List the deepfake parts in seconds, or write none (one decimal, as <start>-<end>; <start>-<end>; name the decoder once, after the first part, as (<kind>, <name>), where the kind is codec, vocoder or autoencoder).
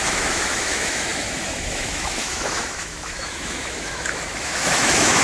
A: 0.0-5.2 (autoencoder, DAC-VAE)